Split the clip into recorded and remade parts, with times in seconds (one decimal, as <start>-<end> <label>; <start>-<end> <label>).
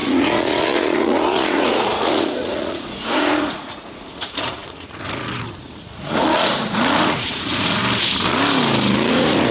0.0-7.8 remade; 7.8-9.1 recorded; 9.1-9.5 remade